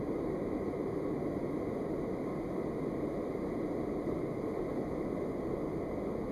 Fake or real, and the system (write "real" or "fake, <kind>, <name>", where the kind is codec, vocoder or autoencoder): real